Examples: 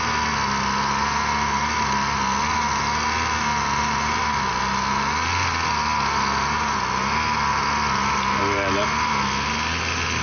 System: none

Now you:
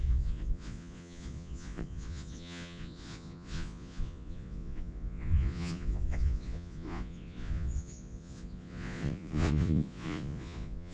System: vocoder, Vocos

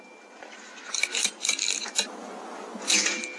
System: none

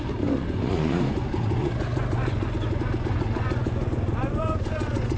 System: vocoder, Vocos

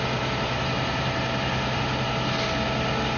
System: none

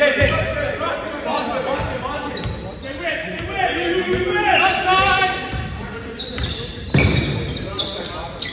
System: none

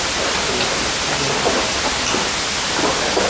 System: none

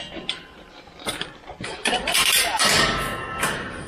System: none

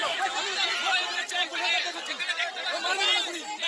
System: none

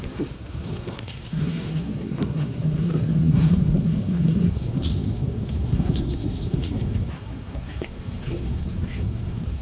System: codec, SNAC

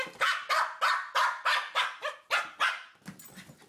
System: none